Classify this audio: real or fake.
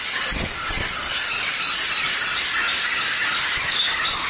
real